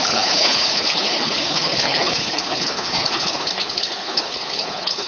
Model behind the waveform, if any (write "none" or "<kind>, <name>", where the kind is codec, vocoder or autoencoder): codec, HILCodec